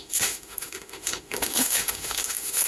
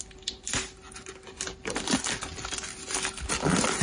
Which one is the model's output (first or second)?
first